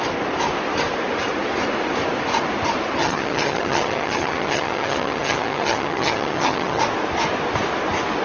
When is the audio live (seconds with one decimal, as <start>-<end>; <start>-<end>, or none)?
0.0-3.0; 6.8-8.2